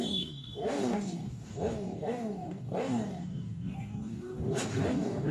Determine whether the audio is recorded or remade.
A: remade